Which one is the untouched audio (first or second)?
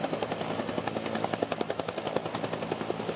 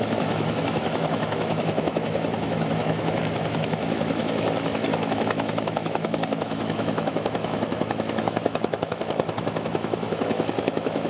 first